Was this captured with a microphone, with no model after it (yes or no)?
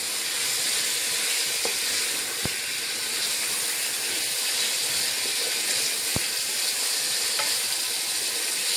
yes